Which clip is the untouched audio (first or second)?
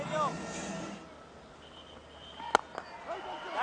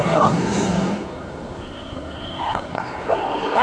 first